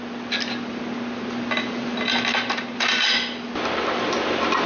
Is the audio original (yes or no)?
yes